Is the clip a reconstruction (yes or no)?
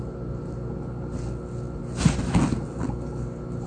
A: no